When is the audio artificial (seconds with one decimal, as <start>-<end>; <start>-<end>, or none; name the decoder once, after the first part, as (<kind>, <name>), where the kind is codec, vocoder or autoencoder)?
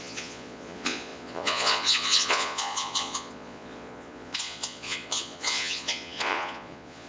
0.0-7.1 (vocoder, Vocos)